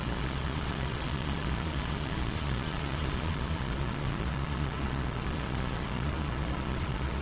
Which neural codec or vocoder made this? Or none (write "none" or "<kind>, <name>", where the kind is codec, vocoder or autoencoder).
vocoder, Vocos